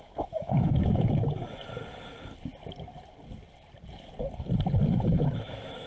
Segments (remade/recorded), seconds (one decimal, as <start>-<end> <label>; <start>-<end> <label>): 0.0-1.4 remade; 1.4-4.9 recorded; 4.9-5.9 remade